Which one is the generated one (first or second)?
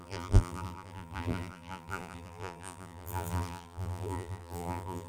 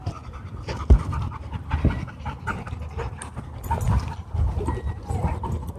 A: first